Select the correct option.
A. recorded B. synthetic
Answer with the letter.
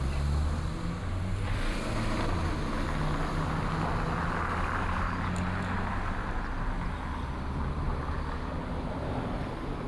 A